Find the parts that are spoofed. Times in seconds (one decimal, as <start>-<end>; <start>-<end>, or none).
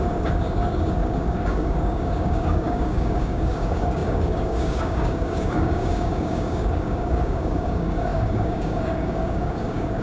0.0-10.0